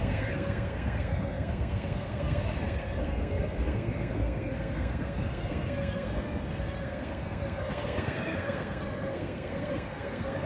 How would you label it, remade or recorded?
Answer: remade